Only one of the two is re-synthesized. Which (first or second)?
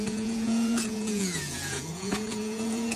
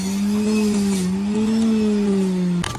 first